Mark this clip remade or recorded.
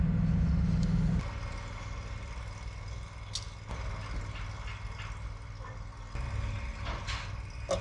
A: recorded